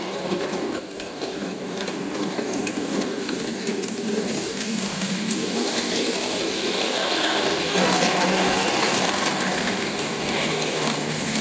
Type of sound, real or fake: fake